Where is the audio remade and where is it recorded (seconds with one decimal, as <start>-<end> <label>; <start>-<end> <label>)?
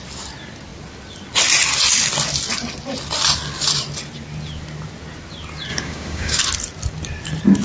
0.0-5.7 recorded; 5.7-6.4 remade; 6.4-7.6 recorded